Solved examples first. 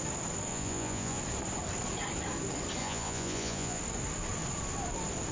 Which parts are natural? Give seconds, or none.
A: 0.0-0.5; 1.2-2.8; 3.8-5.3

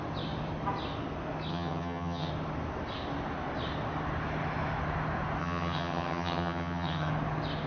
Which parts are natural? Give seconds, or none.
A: 0.0-1.5; 2.3-5.4; 7.1-7.7

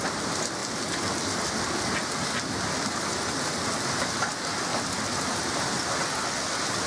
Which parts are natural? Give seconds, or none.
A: 0.0-0.6; 1.1-2.2; 4.3-6.9

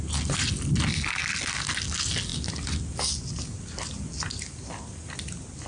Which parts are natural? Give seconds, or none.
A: 0.0-5.7

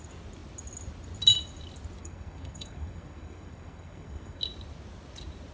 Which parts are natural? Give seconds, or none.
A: 0.0-2.0; 4.4-5.5